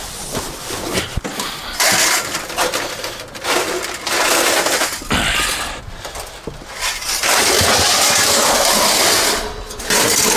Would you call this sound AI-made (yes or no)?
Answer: no